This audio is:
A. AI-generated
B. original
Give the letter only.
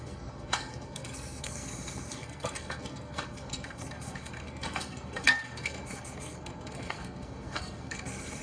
A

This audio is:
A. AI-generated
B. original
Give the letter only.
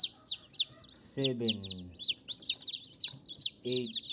B